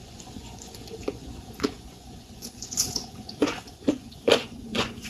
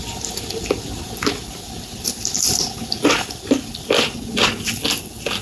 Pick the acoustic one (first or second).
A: second